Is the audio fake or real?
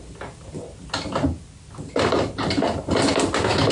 real